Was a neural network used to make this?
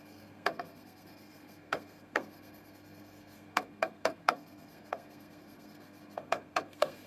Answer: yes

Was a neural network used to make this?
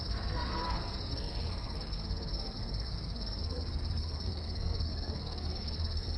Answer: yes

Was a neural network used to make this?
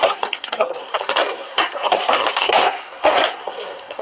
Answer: yes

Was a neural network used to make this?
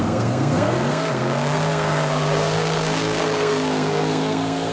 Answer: yes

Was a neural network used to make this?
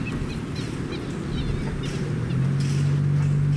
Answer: no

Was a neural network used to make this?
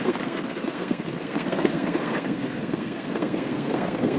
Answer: yes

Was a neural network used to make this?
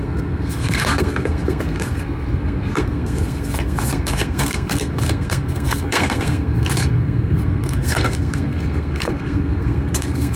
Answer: yes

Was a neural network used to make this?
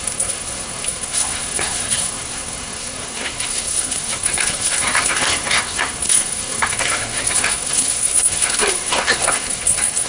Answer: yes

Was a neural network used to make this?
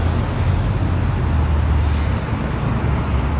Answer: no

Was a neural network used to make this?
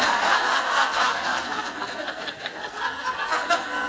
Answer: yes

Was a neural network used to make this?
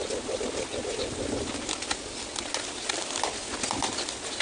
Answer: no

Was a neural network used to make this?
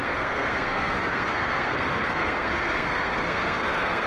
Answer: yes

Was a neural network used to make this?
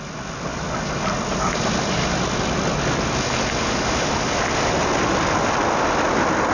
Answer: no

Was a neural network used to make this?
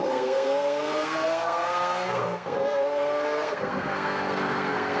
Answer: yes